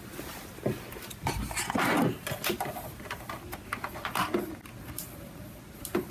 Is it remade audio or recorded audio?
recorded